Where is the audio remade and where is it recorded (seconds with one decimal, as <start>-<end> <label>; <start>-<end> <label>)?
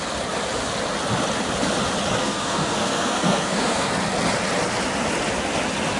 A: 0.0-2.2 recorded; 2.2-3.9 remade; 3.9-6.0 recorded